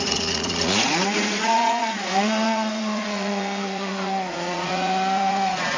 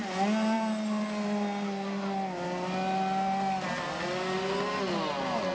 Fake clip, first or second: first